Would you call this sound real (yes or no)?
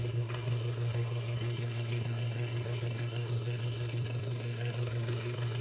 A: no